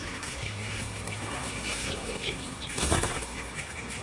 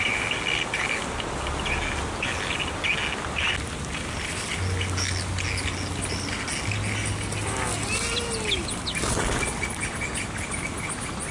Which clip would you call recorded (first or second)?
second